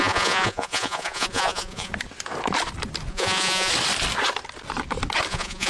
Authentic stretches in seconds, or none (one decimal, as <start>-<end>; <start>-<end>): 1.9-3.1; 3.7-5.3